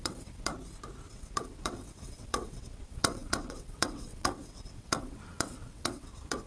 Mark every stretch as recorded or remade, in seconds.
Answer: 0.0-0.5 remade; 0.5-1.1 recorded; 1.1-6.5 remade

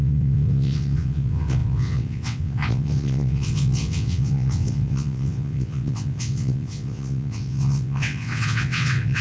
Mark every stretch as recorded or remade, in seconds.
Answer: 0.0-9.2 remade